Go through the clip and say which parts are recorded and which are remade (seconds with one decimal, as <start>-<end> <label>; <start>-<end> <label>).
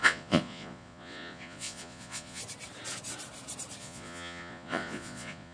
0.0-2.4 remade; 2.4-3.8 recorded; 3.8-5.5 remade